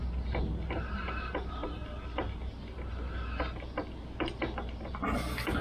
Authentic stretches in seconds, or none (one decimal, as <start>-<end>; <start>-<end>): 0.0-5.6